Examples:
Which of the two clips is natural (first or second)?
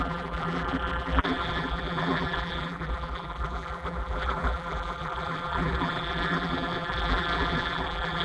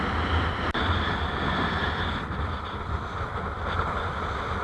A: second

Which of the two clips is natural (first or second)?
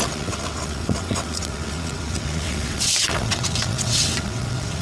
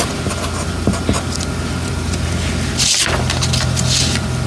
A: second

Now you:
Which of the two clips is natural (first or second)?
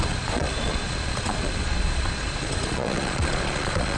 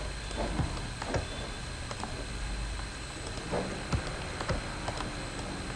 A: second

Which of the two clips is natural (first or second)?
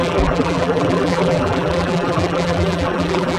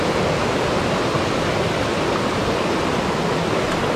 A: second